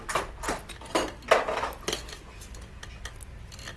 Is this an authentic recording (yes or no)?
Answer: yes